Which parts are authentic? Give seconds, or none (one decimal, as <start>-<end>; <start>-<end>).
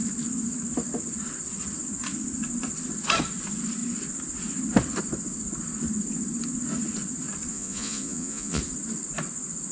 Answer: 0.0-7.5; 8.6-9.7